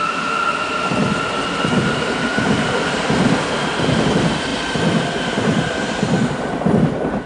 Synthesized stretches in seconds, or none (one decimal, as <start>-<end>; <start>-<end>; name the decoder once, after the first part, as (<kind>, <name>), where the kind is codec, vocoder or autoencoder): none